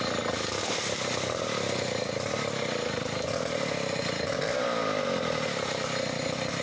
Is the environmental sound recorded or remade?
recorded